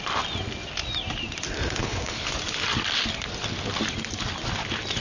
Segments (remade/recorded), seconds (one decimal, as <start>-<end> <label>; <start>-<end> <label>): 0.0-1.8 recorded; 1.8-2.3 remade; 2.3-5.0 recorded